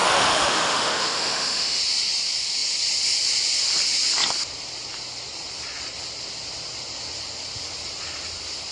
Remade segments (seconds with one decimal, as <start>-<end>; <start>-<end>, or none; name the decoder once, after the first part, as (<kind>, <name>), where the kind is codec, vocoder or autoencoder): 0.0-1.8 (autoencoder, DAC-VAE)